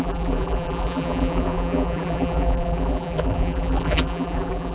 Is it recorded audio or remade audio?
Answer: remade